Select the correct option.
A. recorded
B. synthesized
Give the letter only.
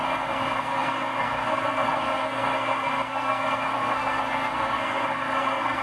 B